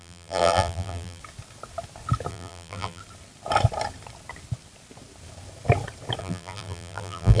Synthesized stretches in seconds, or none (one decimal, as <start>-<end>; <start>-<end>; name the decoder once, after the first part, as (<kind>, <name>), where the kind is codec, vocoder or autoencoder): 0.0-1.2 (vocoder, BigVGAN v2); 2.3-3.0; 6.2-7.4